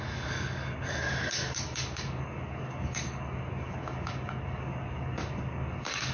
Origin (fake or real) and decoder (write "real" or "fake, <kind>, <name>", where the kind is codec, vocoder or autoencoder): fake, codec, DAC